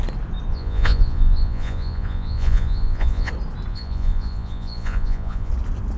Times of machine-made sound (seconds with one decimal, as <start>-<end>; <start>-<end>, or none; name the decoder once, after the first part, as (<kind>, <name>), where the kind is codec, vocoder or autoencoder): 0.5-3.3 (vocoder, Vocos); 3.7-5.5